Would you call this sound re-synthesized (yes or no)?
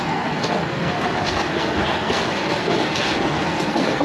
yes